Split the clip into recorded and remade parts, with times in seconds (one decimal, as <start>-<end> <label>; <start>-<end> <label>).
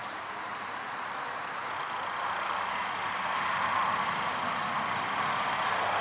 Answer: 0.0-0.7 remade; 0.7-6.0 recorded